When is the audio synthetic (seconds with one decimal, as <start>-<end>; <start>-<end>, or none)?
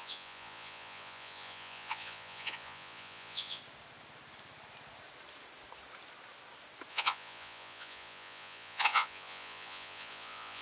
0.0-3.6; 6.9-10.6